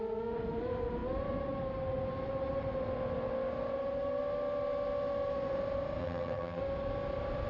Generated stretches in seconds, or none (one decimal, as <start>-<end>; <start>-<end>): 6.0-6.6